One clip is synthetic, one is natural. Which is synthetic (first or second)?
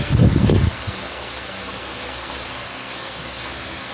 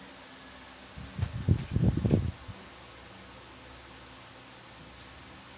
first